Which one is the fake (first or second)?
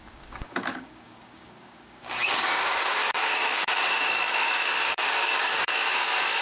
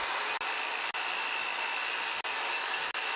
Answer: first